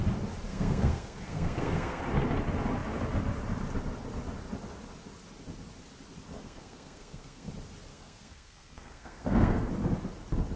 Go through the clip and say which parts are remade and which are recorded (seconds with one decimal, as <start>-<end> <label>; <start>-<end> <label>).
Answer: 0.0-0.5 recorded; 0.5-2.0 remade; 2.0-6.4 recorded; 6.4-7.5 remade; 7.5-7.9 recorded; 7.9-9.7 remade; 9.7-10.6 recorded